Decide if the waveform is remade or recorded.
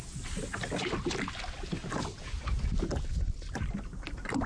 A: recorded